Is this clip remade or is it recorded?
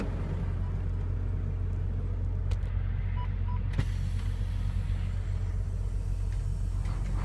recorded